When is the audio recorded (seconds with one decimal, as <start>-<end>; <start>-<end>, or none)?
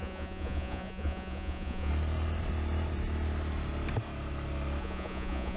1.9-4.8